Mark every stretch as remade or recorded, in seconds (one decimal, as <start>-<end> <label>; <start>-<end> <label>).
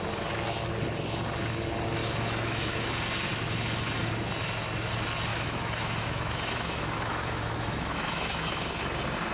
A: 0.0-2.0 recorded; 2.0-2.9 remade; 2.9-5.3 recorded; 5.3-8.8 remade; 8.8-9.3 recorded